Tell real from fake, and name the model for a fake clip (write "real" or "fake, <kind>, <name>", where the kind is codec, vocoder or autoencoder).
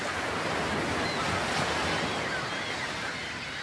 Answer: real